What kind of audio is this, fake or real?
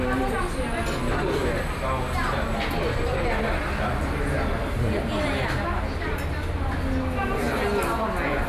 real